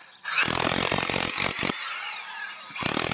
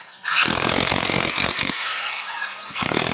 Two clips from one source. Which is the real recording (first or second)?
first